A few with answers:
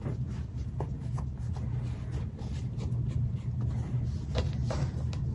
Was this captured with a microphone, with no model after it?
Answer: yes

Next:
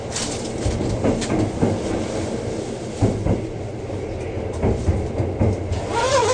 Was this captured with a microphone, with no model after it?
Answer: yes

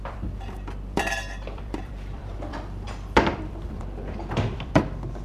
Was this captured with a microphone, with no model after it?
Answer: no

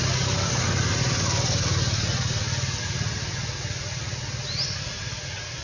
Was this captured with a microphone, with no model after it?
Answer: yes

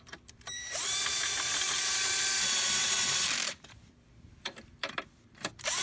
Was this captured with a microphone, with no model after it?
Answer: no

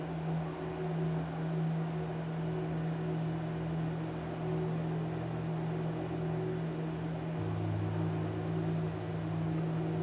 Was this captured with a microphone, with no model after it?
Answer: yes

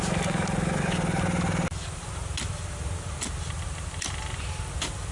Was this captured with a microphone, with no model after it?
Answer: yes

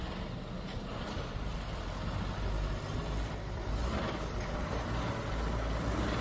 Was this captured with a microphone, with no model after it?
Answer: yes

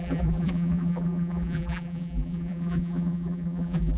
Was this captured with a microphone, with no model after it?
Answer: no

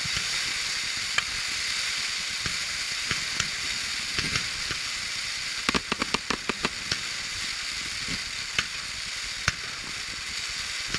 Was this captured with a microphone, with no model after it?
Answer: yes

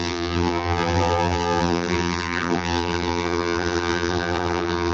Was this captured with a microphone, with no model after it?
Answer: no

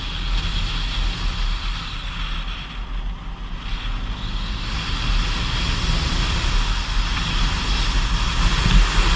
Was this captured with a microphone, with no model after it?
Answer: yes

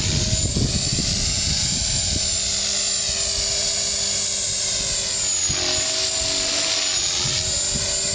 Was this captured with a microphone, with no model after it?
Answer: yes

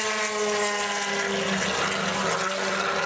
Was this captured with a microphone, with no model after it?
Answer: yes